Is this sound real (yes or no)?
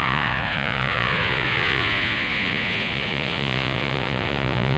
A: no